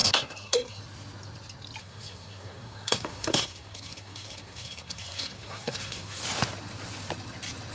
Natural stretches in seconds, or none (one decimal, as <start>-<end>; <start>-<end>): 0.8-1.8; 6.2-7.7